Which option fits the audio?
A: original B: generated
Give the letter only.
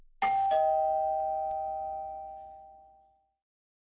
A